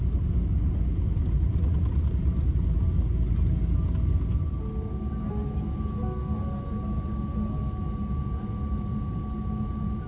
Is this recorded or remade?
recorded